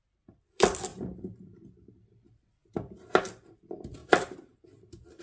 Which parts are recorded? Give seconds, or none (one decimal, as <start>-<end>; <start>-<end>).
2.6-3.2; 4.0-5.2